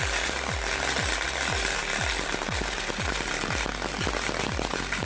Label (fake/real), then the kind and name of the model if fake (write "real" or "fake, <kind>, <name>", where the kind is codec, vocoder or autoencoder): real